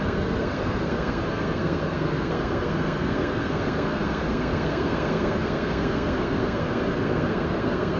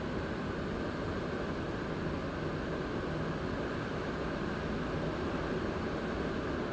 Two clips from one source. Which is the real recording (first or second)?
second